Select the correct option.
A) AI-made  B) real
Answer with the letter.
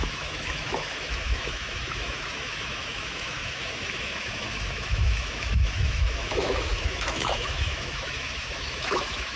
A